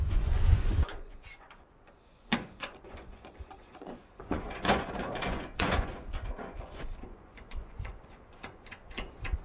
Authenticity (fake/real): fake